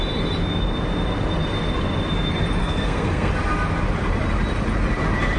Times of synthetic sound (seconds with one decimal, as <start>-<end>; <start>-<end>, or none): 2.6-3.3